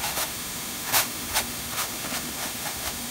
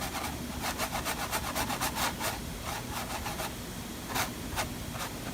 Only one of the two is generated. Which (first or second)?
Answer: first